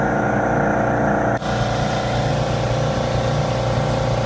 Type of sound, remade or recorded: recorded